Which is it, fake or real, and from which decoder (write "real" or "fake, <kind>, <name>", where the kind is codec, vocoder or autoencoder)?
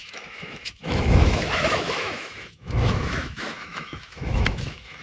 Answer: fake, autoencoder, DAC-VAE